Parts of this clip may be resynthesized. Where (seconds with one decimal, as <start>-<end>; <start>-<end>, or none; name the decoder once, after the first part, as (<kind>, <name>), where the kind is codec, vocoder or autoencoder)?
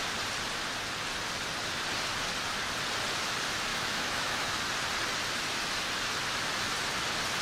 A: 3.7-4.6 (autoencoder, DAC-VAE)